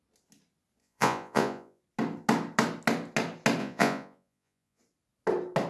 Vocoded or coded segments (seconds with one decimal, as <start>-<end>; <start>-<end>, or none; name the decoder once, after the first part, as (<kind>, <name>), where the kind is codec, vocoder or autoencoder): 0.8-1.8 (vocoder, Vocos); 3.6-4.8

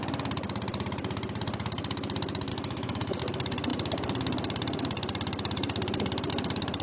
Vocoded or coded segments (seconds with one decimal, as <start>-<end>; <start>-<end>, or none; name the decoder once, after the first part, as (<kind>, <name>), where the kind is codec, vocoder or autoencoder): 2.5-3.2 (autoencoder, DAC-VAE)